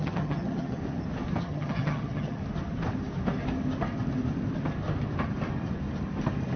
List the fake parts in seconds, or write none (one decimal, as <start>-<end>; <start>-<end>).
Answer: 0.0-0.8; 1.4-2.4